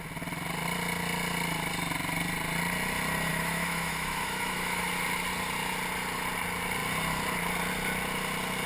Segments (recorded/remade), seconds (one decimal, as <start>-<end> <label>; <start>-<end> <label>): 0.0-3.3 recorded; 3.3-4.9 remade; 4.9-8.7 recorded